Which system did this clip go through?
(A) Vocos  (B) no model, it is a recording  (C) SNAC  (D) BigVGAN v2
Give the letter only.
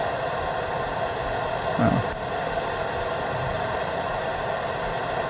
B